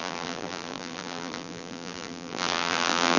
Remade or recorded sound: remade